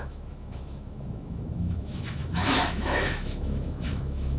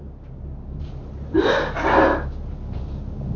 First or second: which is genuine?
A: second